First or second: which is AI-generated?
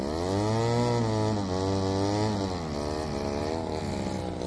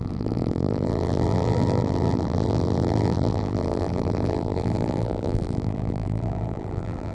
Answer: second